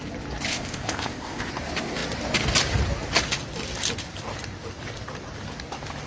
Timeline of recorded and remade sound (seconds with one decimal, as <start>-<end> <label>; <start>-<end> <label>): 0.0-0.5 recorded; 0.5-1.5 remade; 1.5-6.1 recorded